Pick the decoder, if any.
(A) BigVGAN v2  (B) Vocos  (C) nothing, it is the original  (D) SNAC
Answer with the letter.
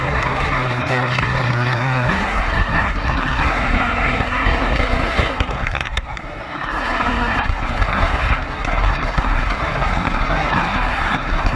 D